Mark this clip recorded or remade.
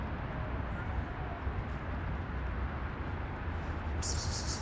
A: recorded